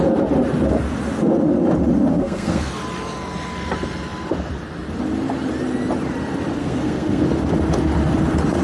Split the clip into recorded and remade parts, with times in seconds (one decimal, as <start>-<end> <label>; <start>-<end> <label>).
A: 0.0-2.1 recorded; 2.1-2.7 remade; 2.7-6.6 recorded; 6.6-7.2 remade; 7.2-8.6 recorded